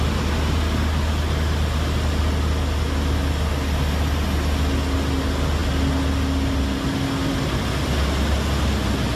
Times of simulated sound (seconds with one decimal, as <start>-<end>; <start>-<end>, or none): none